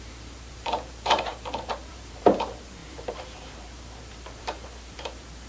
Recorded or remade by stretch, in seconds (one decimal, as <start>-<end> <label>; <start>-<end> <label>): 0.0-5.5 remade